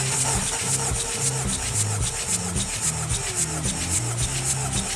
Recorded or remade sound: recorded